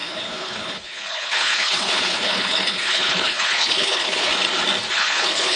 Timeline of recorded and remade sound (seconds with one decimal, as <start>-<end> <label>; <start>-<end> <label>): 0.0-4.3 remade; 4.3-4.9 recorded; 4.9-5.6 remade